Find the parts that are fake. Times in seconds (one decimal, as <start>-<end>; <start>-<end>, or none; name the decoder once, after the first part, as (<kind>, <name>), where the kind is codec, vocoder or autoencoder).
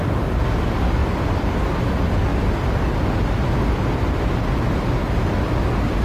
1.0-1.5 (vocoder, BigVGAN v2); 2.3-3.0